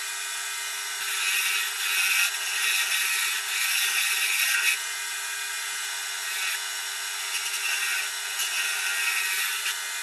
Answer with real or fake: real